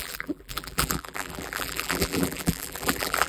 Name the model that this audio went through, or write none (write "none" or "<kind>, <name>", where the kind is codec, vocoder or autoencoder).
vocoder, BigVGAN v2